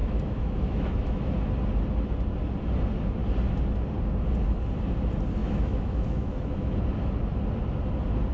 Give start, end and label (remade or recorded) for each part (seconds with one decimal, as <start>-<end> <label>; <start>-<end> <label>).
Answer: 0.0-1.3 remade; 1.3-5.4 recorded; 5.4-6.8 remade; 6.8-8.3 recorded